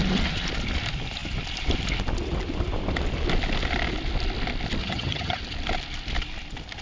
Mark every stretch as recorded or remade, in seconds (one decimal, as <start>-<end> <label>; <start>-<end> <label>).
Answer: 0.0-4.8 recorded; 4.8-5.4 remade; 5.4-6.8 recorded